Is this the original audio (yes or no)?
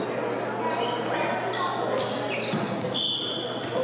yes